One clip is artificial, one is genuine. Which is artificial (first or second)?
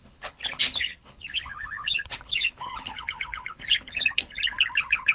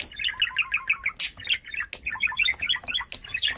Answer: first